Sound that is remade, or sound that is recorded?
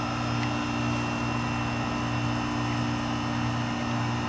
recorded